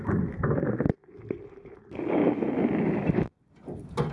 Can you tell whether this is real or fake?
real